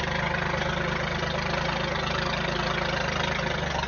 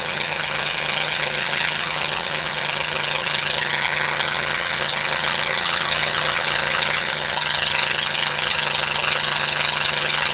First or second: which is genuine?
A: first